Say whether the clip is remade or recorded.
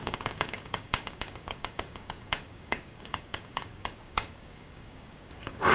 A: remade